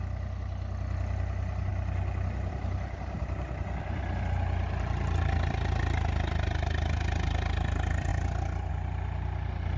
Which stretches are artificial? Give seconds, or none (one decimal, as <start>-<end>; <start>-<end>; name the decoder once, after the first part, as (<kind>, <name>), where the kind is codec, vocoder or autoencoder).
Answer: none